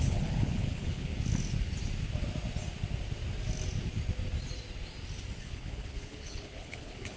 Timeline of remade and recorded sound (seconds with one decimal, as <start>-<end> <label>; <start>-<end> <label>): 0.0-1.1 remade; 1.1-5.4 recorded; 5.4-7.2 remade